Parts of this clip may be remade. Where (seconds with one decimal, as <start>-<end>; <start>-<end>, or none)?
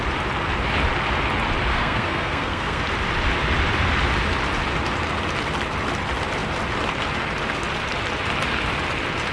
1.7-2.8